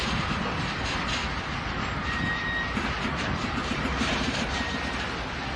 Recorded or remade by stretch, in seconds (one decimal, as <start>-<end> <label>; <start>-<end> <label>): 0.0-2.0 recorded; 2.0-4.7 remade; 4.7-5.6 recorded